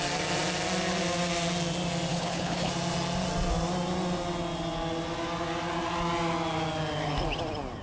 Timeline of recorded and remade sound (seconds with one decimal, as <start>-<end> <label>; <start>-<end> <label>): 0.0-2.1 recorded; 2.1-2.7 remade; 2.7-7.8 recorded